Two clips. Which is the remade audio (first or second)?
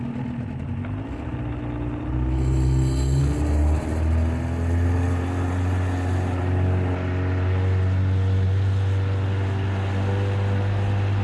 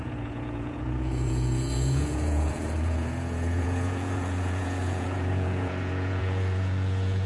second